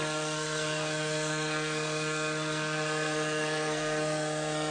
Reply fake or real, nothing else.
fake